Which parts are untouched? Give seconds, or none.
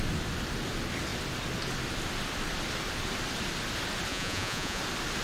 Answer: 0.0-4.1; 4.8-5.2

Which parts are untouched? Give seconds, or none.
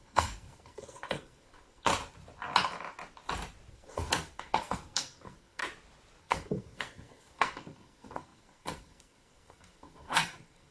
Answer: 1.9-3.7; 5.6-6.2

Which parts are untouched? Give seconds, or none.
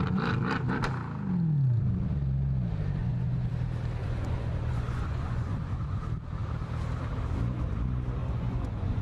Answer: 0.0-3.0; 3.5-4.0; 6.0-8.2